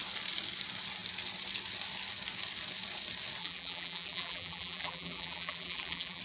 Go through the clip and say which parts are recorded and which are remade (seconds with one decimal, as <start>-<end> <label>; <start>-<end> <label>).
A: 0.0-3.4 recorded; 3.4-6.2 remade